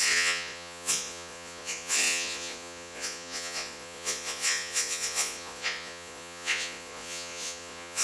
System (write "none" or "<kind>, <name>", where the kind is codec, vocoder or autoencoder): vocoder, Vocos